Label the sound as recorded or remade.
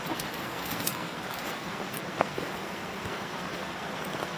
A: remade